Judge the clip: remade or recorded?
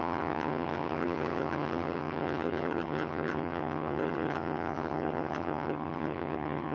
remade